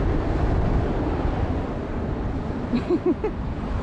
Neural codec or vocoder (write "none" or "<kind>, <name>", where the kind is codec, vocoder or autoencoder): none